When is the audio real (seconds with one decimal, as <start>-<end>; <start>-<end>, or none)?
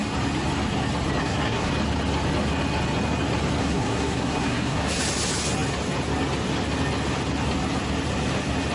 0.0-1.2; 1.7-3.6; 5.0-8.7